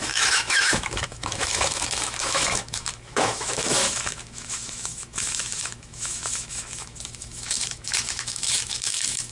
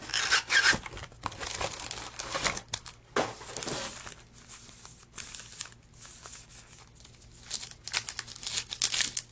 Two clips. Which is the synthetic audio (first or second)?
first